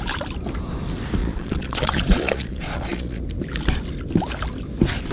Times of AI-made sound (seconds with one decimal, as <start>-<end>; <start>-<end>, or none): 1.2-3.2